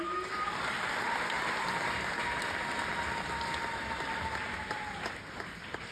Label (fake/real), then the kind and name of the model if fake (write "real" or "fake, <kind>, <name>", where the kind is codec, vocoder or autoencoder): real